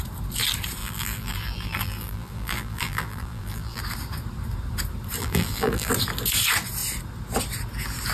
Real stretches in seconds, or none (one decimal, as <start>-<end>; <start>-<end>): 0.0-0.8; 3.8-5.2; 5.9-8.1